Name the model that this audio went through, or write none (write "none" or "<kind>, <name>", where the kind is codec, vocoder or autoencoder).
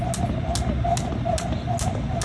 none